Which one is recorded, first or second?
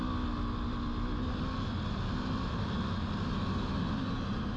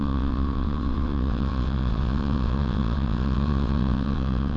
first